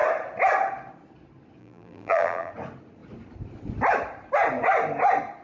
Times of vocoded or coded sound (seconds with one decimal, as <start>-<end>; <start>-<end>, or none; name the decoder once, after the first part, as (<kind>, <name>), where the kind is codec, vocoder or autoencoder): 1.6-2.5 (vocoder, BigVGAN v2)